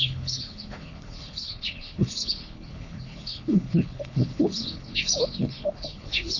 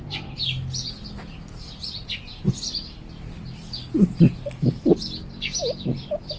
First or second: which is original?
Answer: second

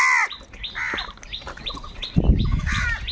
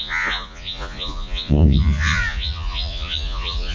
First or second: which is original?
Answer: first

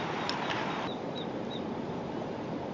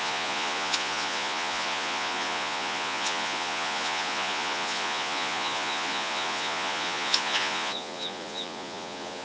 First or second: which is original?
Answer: first